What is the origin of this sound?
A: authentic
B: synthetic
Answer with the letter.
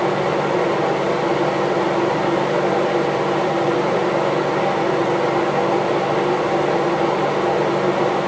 A